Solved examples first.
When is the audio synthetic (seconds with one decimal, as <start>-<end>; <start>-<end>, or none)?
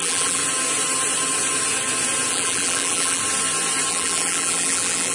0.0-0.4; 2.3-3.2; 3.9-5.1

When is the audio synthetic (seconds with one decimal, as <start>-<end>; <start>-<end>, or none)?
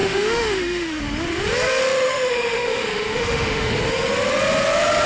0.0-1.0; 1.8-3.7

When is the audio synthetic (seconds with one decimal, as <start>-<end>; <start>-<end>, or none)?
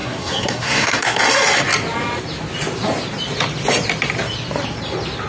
0.0-1.2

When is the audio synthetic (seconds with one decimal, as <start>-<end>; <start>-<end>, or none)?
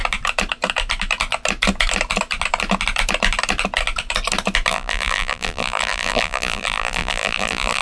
4.7-7.8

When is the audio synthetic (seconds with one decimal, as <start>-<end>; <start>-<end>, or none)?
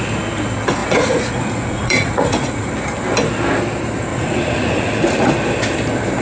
0.8-2.7; 4.1-5.3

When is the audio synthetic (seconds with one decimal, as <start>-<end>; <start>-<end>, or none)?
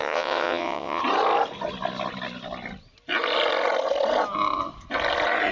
0.0-1.0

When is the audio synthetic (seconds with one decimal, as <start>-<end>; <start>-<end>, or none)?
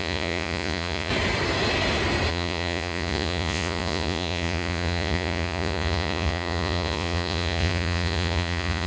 0.0-1.1; 2.3-8.9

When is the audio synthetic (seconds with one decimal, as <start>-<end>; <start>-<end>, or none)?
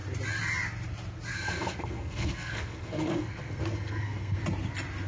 1.3-4.4